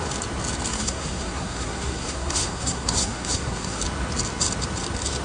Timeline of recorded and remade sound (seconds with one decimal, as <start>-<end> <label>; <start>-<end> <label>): 0.0-0.7 recorded; 0.7-3.8 remade; 3.8-5.2 recorded